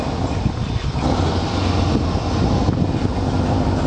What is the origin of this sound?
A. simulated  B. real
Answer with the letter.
B